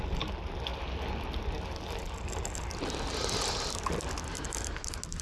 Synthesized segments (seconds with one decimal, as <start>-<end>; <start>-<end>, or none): none